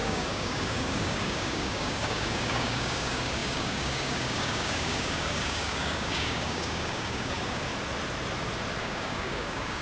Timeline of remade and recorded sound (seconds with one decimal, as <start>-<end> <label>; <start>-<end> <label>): 0.0-7.7 remade; 7.7-8.8 recorded; 8.8-9.8 remade